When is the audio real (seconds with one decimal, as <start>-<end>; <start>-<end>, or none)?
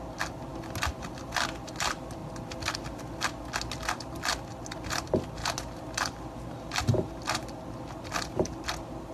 0.0-9.1